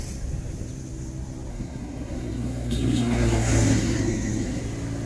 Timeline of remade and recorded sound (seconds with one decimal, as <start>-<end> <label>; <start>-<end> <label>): 0.0-1.5 recorded; 1.5-4.6 remade; 4.6-5.1 recorded